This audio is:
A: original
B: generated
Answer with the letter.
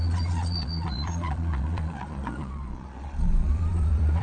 B